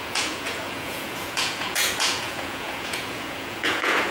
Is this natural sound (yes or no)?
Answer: no